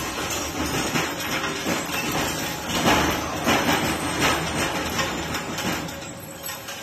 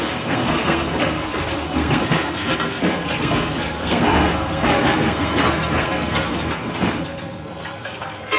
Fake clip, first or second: second